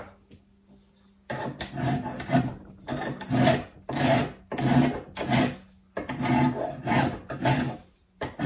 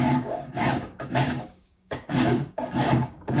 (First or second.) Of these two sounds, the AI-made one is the second